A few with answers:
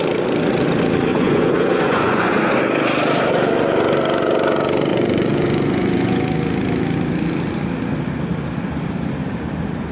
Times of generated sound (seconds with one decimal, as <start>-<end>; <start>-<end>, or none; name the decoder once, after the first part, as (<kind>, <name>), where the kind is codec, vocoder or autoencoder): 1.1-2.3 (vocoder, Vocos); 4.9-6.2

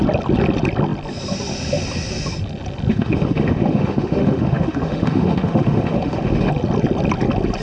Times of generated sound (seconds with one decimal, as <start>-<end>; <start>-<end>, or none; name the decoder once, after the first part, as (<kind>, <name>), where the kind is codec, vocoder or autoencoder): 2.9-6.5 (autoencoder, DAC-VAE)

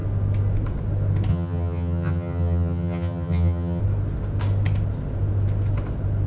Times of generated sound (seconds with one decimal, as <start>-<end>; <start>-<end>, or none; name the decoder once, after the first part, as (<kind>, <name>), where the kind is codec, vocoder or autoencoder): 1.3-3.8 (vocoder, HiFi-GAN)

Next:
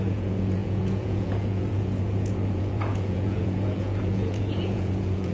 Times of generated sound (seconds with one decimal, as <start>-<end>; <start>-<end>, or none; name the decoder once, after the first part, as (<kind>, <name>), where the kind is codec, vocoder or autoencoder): 0.0-5.3 (vocoder, Vocos)

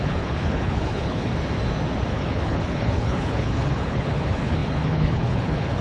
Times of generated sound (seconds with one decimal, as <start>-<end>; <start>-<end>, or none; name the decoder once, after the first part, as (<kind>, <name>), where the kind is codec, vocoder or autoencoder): 0.0-1.3 (codec, HILCodec); 2.1-5.8

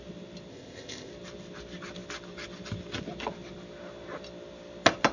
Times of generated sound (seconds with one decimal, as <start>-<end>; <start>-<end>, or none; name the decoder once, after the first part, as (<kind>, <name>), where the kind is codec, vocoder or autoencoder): 0.5-1.1 (codec, ZipCodec)

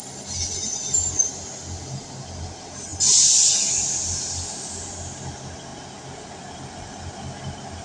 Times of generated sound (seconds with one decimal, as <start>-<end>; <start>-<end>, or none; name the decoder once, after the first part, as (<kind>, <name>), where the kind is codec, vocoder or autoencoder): none

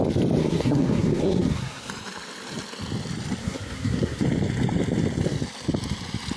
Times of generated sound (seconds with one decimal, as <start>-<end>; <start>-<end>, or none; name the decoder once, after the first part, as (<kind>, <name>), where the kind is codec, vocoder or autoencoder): 0.4-1.9 (codec, SNAC); 3.4-4.2